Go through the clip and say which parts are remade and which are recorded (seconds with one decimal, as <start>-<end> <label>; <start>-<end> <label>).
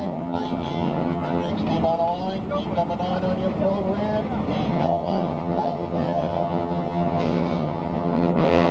0.0-1.5 remade; 1.5-4.7 recorded; 4.7-8.7 remade